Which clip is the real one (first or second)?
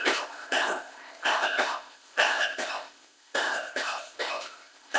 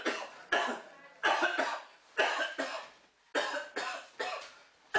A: second